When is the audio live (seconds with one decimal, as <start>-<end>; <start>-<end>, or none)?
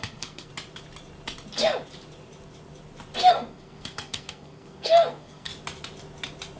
0.5-3.3; 5.5-6.6